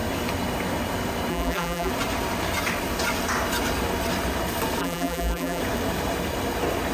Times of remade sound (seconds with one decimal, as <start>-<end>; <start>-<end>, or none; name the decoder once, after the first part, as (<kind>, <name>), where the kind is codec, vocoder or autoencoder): 1.3-1.9 (vocoder, BigVGAN v2); 4.8-5.6